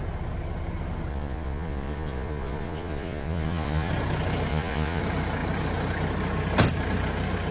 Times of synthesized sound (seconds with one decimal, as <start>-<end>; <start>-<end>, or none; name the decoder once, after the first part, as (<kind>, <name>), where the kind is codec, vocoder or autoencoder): 1.1-3.9 (vocoder, Vocos); 4.5-5.0